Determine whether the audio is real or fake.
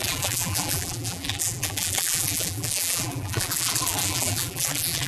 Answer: fake